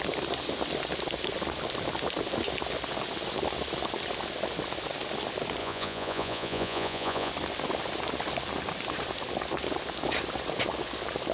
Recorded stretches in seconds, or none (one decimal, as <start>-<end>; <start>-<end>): 0.0-5.6; 7.3-11.3